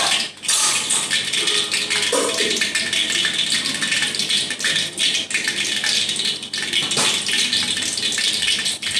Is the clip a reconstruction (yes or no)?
no